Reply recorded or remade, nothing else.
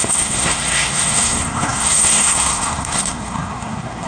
remade